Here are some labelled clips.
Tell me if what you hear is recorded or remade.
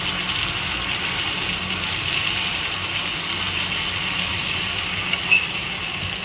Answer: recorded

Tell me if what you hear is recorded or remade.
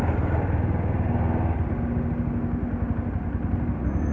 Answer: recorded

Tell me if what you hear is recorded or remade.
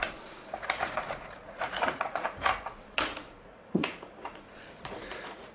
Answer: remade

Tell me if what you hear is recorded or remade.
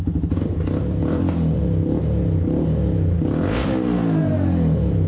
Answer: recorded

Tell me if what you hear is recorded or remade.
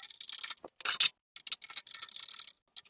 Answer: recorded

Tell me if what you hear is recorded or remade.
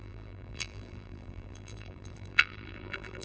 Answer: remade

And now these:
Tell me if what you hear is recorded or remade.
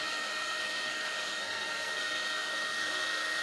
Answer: remade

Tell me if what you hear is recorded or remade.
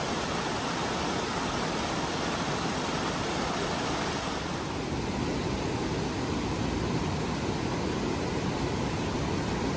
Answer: recorded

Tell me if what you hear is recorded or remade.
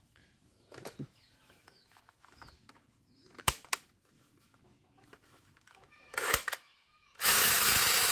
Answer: remade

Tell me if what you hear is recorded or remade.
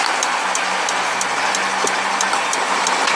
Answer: recorded